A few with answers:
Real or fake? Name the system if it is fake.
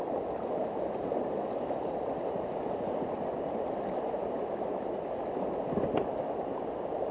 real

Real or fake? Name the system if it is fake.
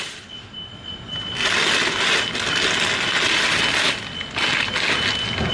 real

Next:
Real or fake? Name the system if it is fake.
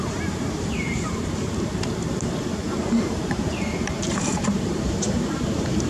fake, vocoder, BigVGAN v2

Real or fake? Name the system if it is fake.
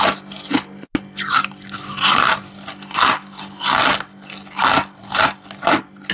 real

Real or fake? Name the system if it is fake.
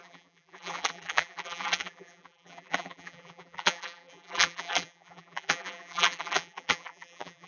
fake, vocoder, BigVGAN v2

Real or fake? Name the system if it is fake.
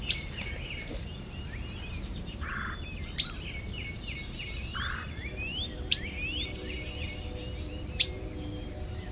fake, vocoder, BigVGAN v2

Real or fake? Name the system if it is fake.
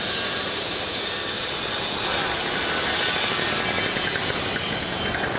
real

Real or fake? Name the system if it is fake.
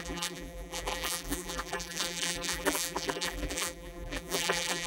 fake, vocoder, BigVGAN v2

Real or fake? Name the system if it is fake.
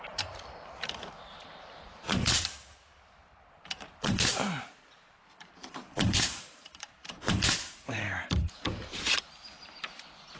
fake, vocoder, BigVGAN v2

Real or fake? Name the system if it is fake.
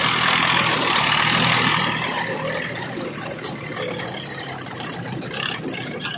fake, vocoder, BigVGAN v2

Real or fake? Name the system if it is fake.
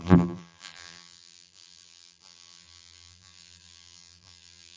fake, vocoder, BigVGAN v2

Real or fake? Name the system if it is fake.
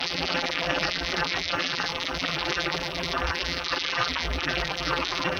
fake, vocoder, BigVGAN v2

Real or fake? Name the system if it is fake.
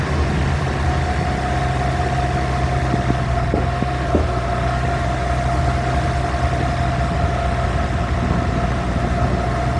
real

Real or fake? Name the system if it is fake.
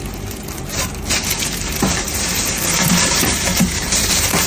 fake, vocoder, BigVGAN v2